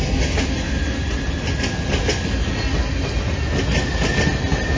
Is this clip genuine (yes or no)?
yes